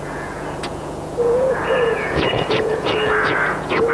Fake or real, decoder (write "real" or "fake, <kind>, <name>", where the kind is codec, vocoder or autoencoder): fake, vocoder, Vocos